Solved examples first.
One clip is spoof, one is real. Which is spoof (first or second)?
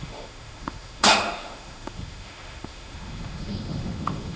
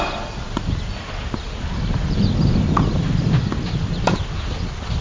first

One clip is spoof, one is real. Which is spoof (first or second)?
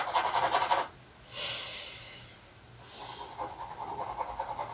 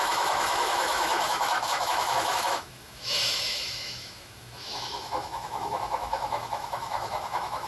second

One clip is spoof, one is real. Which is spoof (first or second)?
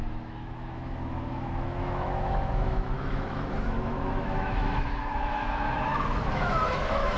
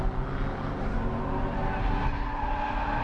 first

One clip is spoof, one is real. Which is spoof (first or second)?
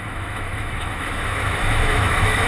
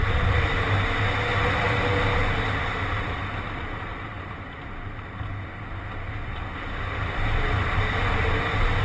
first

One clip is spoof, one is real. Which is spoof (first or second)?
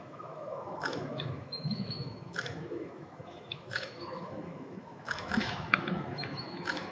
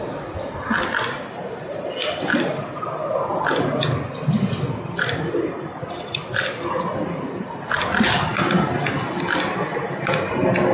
first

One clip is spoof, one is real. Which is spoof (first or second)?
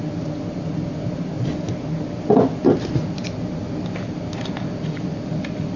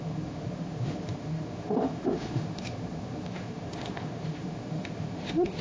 second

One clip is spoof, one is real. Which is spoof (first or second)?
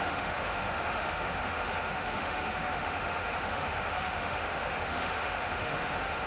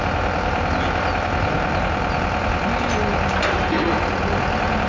first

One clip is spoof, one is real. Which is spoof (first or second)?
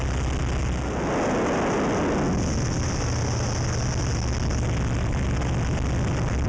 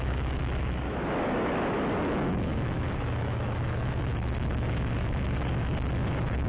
second